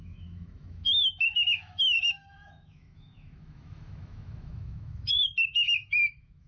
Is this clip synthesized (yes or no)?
yes